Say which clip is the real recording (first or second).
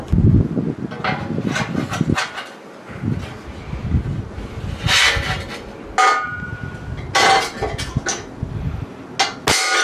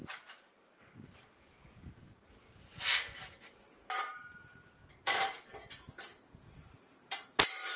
first